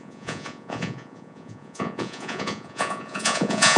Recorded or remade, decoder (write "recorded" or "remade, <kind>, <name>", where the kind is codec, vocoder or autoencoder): remade, vocoder, Vocos